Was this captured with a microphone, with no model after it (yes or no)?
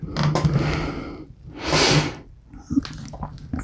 yes